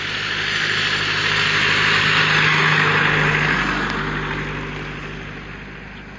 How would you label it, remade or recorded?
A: recorded